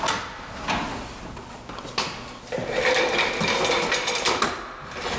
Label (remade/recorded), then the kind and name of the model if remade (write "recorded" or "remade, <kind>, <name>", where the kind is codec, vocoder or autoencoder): recorded